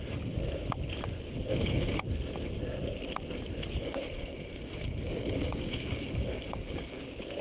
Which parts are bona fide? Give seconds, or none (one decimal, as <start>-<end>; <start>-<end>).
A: 0.0-1.5; 2.0-3.8; 7.0-7.4